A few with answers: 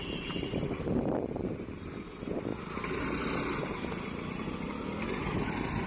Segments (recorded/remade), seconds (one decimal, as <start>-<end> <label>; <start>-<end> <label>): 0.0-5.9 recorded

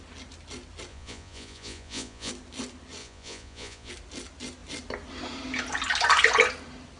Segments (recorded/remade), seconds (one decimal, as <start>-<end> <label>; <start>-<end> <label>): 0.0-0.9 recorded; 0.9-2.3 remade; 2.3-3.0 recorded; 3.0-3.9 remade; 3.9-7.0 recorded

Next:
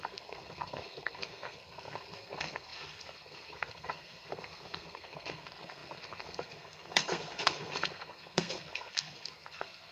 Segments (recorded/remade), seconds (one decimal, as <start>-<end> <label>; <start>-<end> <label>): 0.0-9.9 remade

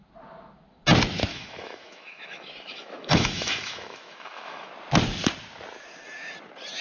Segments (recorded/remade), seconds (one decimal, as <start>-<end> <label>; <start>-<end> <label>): 0.0-1.3 recorded; 1.3-4.7 remade; 4.7-6.8 recorded

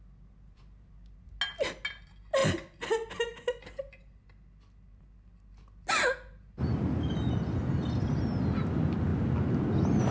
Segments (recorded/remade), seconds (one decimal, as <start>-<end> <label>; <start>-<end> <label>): 0.0-10.1 recorded